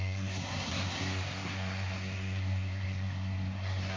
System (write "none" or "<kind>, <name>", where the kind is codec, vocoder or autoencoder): codec, SNAC